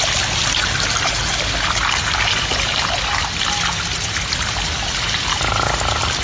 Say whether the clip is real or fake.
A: real